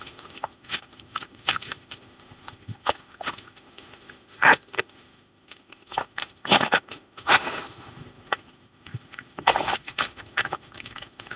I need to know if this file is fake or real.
fake